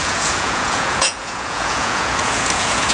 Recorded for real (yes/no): no